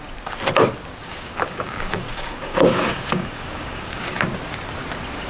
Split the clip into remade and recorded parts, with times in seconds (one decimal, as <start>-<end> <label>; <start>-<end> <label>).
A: 0.0-1.0 recorded; 1.0-4.2 remade; 4.2-5.3 recorded